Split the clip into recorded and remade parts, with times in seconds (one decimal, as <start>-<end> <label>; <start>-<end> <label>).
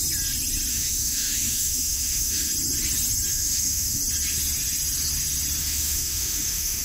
0.0-0.7 recorded; 0.7-2.5 remade; 2.5-3.3 recorded; 3.3-4.0 remade; 4.0-5.6 recorded; 5.6-6.8 remade